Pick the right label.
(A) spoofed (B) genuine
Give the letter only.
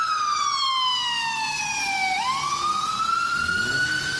B